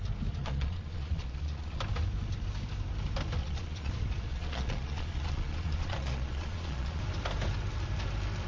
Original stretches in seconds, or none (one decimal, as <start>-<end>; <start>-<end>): 0.0-0.4; 1.8-3.4; 3.9-4.3; 7.0-8.5